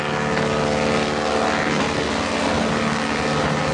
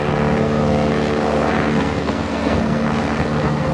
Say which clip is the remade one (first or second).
second